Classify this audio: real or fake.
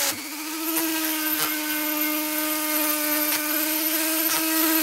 real